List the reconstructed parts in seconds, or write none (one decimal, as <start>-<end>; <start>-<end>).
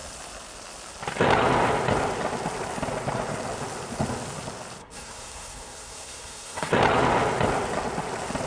4.8-6.7